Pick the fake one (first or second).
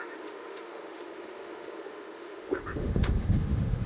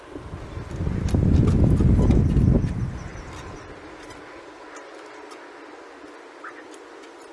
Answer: first